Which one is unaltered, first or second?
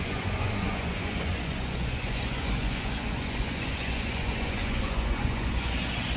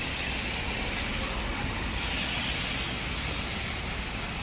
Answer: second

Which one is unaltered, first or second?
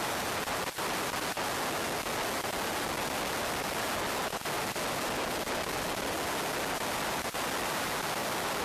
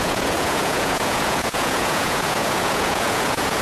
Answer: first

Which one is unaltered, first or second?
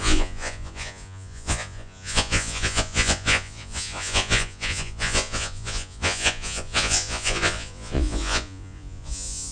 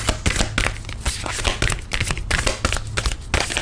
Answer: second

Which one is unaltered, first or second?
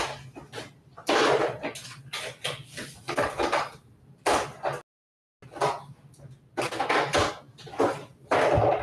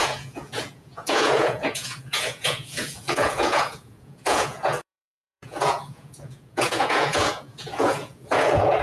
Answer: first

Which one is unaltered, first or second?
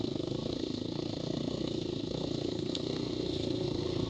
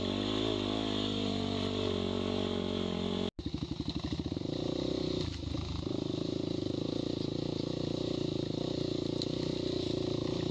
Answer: second